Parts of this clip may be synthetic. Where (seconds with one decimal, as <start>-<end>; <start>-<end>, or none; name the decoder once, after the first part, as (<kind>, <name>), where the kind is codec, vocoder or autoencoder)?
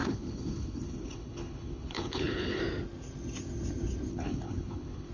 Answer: 0.0-2.6 (codec, HILCodec); 4.1-5.1